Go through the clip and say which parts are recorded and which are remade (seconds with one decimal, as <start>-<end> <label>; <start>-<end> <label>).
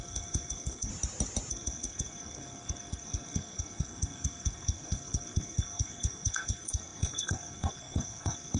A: 0.0-0.9 remade; 0.9-1.5 recorded; 1.5-8.6 remade